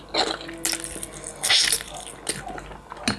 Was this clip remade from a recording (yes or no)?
no